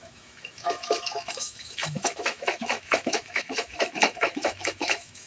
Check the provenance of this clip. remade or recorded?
remade